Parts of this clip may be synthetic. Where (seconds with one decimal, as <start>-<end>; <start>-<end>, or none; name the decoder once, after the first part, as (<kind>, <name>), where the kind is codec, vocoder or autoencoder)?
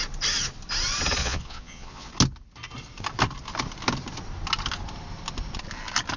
1.2-2.1 (vocoder, Vocos)